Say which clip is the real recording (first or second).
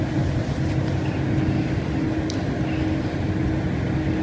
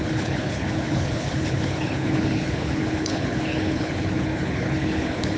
first